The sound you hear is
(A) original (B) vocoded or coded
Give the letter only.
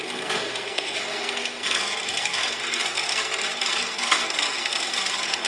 B